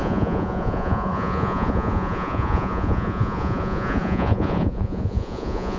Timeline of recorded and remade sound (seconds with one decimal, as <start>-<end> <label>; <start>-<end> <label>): 0.0-5.8 remade